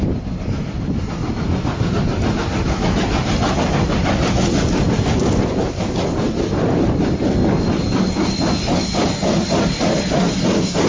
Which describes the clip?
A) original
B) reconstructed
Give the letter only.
A